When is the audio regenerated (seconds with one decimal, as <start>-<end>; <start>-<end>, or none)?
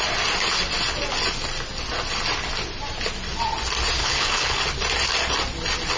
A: 4.0-4.6